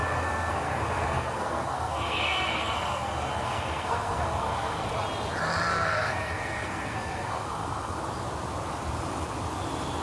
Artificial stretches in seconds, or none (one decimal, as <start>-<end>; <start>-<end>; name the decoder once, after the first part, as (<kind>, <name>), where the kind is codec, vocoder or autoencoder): 0.0-4.9 (codec, SNAC); 5.7-8.0